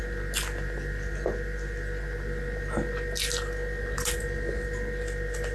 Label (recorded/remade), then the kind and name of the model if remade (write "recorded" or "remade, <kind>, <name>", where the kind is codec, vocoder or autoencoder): recorded